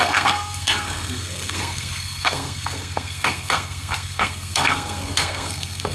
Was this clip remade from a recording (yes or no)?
yes